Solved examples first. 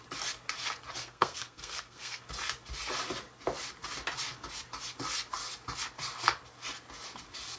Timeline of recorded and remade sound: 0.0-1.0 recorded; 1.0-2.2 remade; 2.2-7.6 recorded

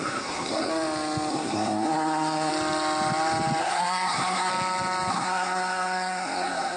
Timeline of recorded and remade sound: 0.0-0.7 remade; 0.7-1.3 recorded; 1.3-2.5 remade; 2.5-3.6 recorded; 3.6-4.5 remade; 4.5-5.1 recorded; 5.1-6.8 remade

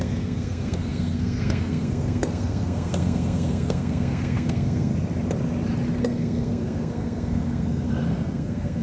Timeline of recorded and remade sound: 0.0-4.9 remade; 4.9-6.0 recorded; 6.0-8.8 remade

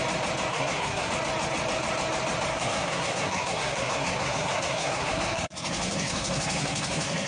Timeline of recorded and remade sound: 0.0-0.5 recorded; 0.5-1.1 remade; 1.1-2.5 recorded; 2.5-7.3 remade